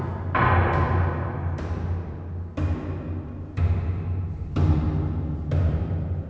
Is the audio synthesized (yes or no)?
no